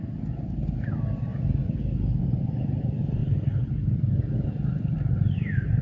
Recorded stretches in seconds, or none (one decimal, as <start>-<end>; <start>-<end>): 0.0-3.2